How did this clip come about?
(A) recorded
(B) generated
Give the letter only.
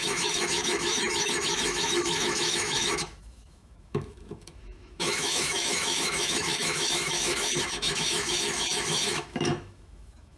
B